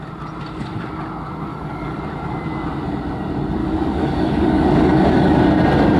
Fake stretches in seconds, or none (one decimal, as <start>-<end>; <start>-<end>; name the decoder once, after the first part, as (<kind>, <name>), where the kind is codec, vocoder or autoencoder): 1.5-2.0 (codec, DAC); 3.6-5.4

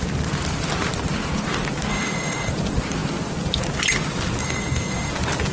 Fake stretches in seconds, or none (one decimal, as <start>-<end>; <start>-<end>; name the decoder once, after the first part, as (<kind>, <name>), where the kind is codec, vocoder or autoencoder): 1.9-2.5 (codec, DAC); 4.4-5.1